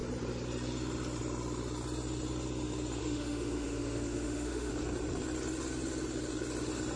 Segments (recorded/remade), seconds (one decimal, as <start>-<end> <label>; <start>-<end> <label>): 0.0-3.0 recorded; 3.0-4.7 remade; 4.7-7.0 recorded

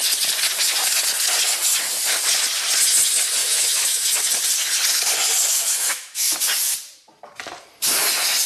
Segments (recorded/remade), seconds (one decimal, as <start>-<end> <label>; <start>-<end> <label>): 0.0-3.4 recorded; 3.4-4.3 remade; 4.3-5.5 recorded; 5.5-6.3 remade; 6.3-8.5 recorded

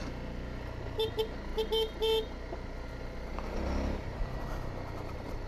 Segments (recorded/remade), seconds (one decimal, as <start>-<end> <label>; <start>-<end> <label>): 0.0-5.5 recorded

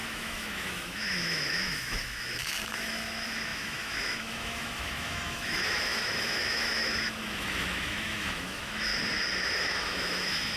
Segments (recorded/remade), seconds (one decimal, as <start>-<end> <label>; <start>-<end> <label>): 0.0-8.9 remade; 8.9-9.5 recorded; 9.5-10.6 remade

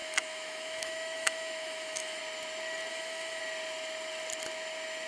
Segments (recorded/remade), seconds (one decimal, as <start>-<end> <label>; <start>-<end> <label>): 0.0-2.2 remade; 2.2-2.9 recorded; 2.9-3.4 remade; 3.4-5.1 recorded

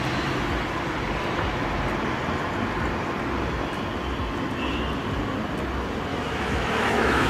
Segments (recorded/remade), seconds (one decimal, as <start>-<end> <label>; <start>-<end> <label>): 0.0-6.1 recorded; 6.1-7.3 remade